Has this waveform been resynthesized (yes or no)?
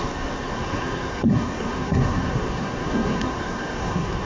yes